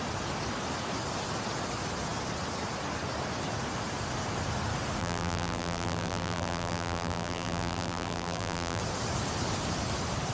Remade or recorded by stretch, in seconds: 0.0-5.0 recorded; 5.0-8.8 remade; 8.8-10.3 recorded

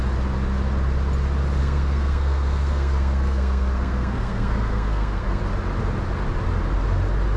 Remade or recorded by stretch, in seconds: 0.0-1.6 recorded; 1.6-5.4 remade; 5.4-7.4 recorded

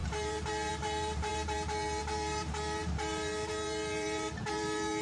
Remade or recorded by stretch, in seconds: 0.0-5.0 remade

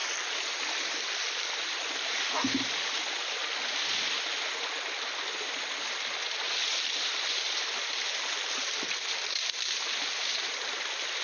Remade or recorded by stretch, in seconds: 0.0-11.2 recorded

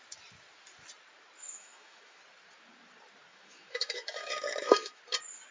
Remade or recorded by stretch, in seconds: 0.0-1.4 recorded; 1.4-2.2 remade; 2.2-3.3 recorded; 3.3-5.0 remade; 5.0-5.5 recorded

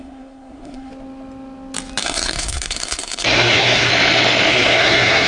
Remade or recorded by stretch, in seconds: 0.0-0.9 remade; 0.9-2.0 recorded; 2.0-3.9 remade; 3.9-4.5 recorded; 4.5-5.3 remade

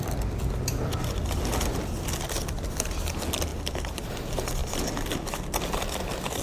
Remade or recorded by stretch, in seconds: 0.0-6.4 recorded